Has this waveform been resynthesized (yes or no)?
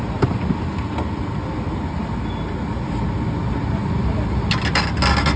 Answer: no